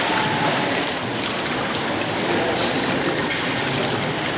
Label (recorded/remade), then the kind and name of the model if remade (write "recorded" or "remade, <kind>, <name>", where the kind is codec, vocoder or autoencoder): recorded